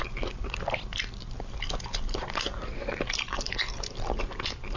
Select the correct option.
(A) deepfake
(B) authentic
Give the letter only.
B